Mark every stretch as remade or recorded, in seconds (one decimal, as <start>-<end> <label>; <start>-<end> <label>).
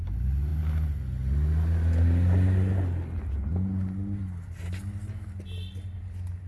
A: 0.0-6.5 recorded